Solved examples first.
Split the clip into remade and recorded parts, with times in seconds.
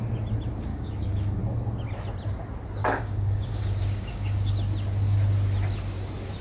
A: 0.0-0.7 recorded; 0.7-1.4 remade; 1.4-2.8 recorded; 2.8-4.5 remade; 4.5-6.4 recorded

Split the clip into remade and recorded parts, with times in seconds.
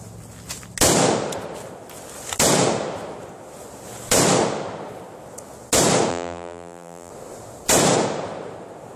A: 0.0-6.1 recorded; 6.1-7.1 remade; 7.1-9.0 recorded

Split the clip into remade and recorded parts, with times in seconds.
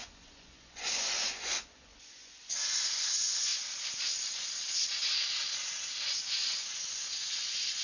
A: 0.0-3.5 remade; 3.5-6.0 recorded; 6.0-7.8 remade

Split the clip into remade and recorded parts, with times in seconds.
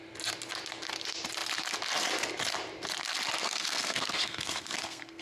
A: 0.0-3.4 recorded; 3.4-5.2 remade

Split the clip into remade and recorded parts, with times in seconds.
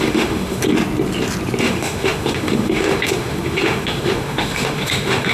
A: 0.0-0.6 remade; 0.6-1.6 recorded; 1.6-5.3 remade